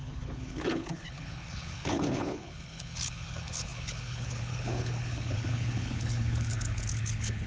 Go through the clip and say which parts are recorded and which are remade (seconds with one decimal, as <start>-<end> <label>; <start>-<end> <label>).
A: 0.0-7.5 remade